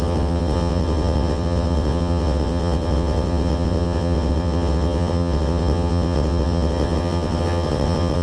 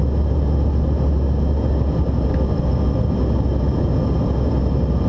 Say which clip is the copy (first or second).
first